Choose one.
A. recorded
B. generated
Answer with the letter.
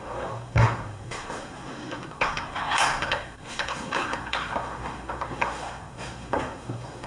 B